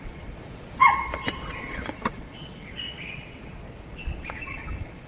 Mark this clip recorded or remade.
remade